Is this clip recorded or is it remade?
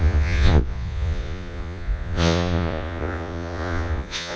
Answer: remade